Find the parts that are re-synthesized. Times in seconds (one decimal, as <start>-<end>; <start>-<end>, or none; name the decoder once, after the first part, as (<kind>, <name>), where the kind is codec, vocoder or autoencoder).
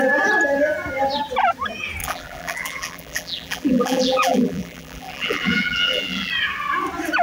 2.0-6.3 (vocoder, BigVGAN v2)